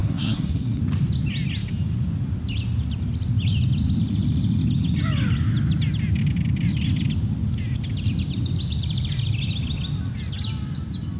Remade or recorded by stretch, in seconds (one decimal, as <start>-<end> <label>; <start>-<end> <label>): 0.0-0.8 remade; 0.8-11.2 recorded